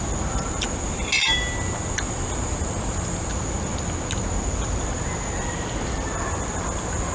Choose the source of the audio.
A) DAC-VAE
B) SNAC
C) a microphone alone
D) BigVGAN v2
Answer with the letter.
C